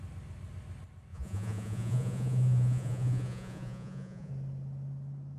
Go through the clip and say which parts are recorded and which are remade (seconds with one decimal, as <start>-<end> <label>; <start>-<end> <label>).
0.0-1.1 recorded; 1.1-4.3 remade; 4.3-5.4 recorded